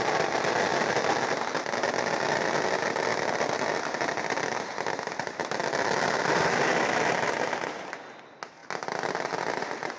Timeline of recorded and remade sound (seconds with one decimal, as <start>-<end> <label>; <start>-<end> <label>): 0.0-10.0 recorded

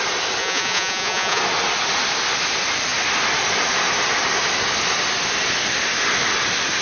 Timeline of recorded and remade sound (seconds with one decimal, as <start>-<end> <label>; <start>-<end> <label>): 0.0-0.4 recorded; 0.4-1.4 remade; 1.4-6.8 recorded